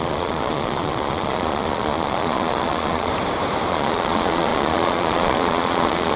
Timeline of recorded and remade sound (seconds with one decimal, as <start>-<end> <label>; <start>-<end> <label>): 0.0-3.1 remade; 3.1-3.7 recorded; 3.7-6.2 remade